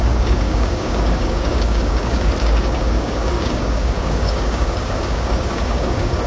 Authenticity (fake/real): fake